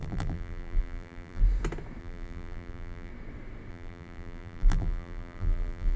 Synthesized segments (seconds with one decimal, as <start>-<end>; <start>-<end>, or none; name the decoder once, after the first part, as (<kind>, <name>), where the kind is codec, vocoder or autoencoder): 0.0-1.4 (vocoder, BigVGAN v2); 2.0-3.1; 3.7-6.0